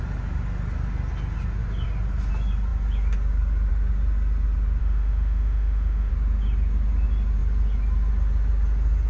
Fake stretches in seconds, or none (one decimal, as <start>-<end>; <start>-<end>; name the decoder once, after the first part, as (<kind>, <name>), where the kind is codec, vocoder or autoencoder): 4.8-6.1 (autoencoder, DAC-VAE)